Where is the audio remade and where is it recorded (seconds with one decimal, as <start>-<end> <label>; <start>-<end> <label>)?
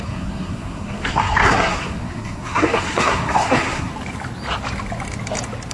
0.0-3.9 remade; 3.9-5.7 recorded